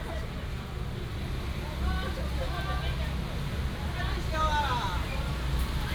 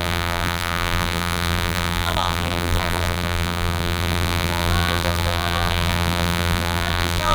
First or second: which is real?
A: first